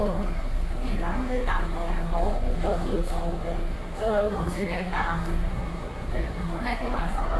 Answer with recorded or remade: remade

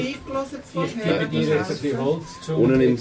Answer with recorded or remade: recorded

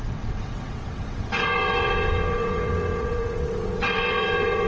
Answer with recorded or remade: remade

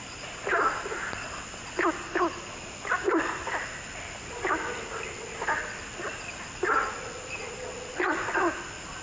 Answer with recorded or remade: recorded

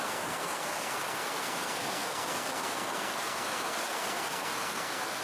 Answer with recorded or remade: remade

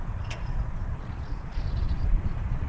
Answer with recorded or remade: remade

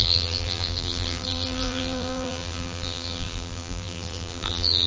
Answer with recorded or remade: remade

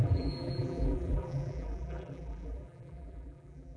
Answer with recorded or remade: remade